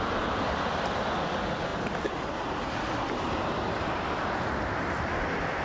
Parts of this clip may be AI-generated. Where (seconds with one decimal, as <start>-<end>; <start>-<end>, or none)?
none